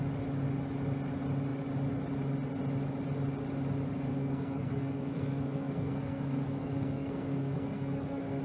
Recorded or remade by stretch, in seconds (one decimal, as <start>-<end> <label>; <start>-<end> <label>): 0.0-4.1 recorded; 4.1-8.4 remade